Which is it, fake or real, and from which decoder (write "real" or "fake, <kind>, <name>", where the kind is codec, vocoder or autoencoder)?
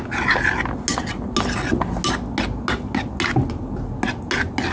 real